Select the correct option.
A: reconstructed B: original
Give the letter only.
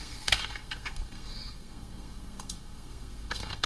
A